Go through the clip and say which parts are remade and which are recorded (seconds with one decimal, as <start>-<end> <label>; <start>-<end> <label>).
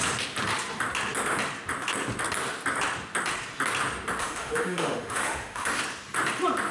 0.0-4.2 recorded; 4.2-5.8 remade; 5.8-6.7 recorded